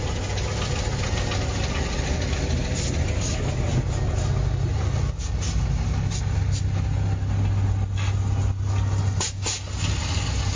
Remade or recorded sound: recorded